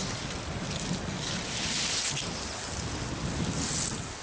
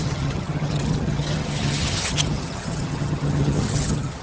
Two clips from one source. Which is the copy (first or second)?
second